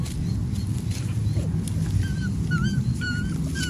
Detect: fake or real real